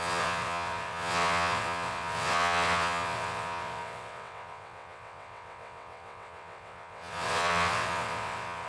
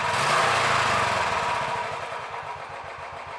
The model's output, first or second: first